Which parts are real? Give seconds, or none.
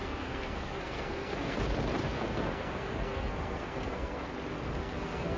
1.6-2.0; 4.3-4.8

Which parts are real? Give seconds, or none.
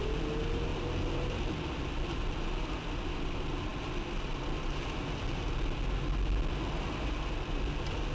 0.0-8.1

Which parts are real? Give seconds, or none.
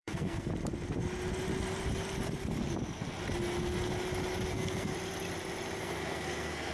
0.5-4.5; 4.9-5.8